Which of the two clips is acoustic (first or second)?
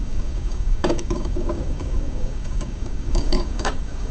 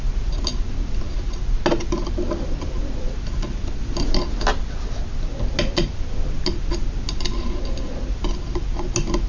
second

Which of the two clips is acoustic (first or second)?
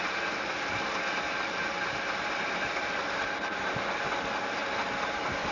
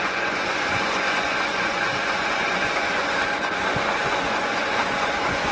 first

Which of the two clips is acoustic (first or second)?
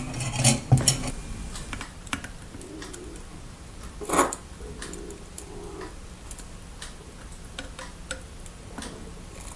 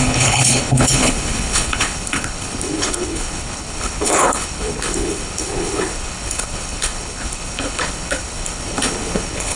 first